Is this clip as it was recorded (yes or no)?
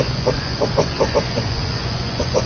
no